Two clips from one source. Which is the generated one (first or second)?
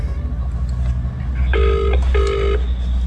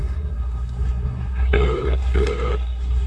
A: second